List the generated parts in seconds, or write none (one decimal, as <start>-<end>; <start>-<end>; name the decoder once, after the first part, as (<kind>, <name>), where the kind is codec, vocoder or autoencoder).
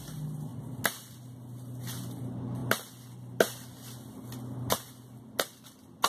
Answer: none